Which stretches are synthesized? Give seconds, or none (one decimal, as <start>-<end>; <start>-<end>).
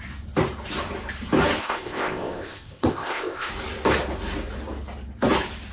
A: 1.6-3.5